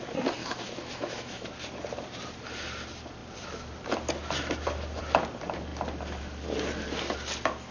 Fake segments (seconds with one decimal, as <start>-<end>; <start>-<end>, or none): 0.4-1.5